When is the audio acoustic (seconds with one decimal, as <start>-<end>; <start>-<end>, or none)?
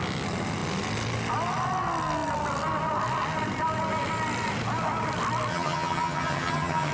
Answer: 0.0-5.5